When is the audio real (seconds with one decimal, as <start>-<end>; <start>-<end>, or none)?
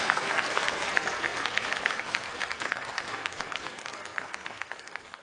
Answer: none